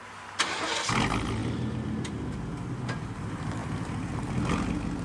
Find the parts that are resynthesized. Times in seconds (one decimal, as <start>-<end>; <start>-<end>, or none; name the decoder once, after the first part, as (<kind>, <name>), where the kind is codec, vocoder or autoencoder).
none